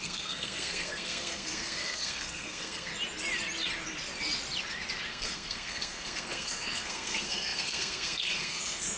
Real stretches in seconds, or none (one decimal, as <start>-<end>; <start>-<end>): 2.9-5.1